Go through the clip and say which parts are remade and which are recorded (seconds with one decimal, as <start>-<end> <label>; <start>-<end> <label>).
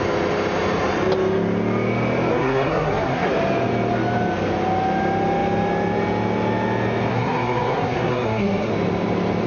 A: 0.0-2.3 recorded; 2.3-3.3 remade; 3.3-7.1 recorded; 7.1-8.7 remade; 8.7-9.5 recorded